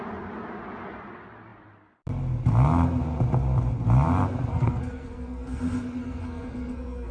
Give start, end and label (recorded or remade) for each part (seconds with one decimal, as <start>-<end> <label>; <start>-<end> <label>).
0.0-4.5 recorded; 4.5-5.6 remade; 5.6-6.0 recorded; 6.0-7.1 remade